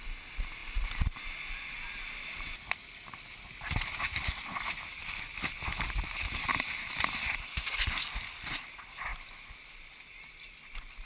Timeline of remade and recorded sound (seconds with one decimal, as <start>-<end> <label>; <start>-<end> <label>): 0.0-11.1 recorded